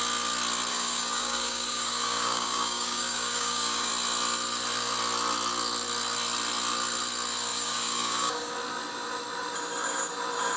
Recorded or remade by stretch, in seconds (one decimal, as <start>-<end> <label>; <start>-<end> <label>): 0.0-0.7 recorded; 0.7-3.9 remade; 3.9-7.5 recorded; 7.5-8.5 remade; 8.5-10.6 recorded